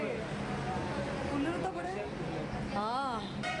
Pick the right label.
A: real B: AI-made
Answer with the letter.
A